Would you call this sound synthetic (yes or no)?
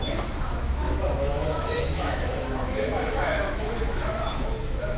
yes